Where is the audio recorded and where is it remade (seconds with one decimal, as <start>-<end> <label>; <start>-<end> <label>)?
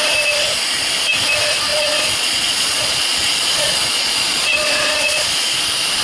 0.0-1.7 recorded; 1.7-5.3 remade; 5.3-6.0 recorded